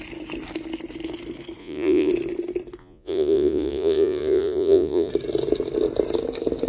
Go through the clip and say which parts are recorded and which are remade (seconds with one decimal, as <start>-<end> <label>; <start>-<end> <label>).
0.0-1.6 recorded; 1.6-2.1 remade; 2.1-2.8 recorded; 2.8-5.1 remade; 5.1-6.7 recorded